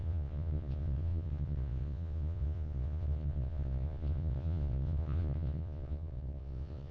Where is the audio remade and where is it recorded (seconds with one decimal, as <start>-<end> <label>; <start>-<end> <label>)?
0.0-6.9 remade